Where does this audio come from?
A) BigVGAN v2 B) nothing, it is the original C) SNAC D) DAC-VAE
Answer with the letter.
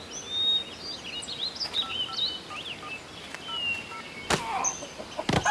B